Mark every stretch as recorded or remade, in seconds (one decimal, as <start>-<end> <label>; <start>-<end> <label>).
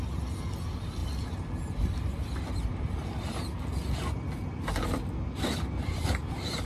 0.0-6.7 recorded